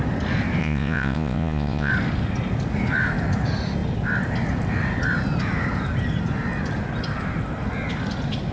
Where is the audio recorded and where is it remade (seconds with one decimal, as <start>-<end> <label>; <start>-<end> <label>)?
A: 0.0-0.6 recorded; 0.6-1.9 remade; 1.9-8.5 recorded